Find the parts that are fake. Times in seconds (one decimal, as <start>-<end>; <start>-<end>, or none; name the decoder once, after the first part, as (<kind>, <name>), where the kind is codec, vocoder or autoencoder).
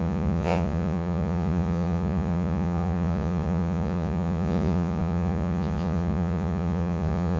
0.0-7.4 (vocoder, Vocos)